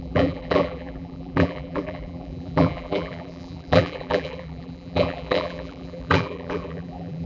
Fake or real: fake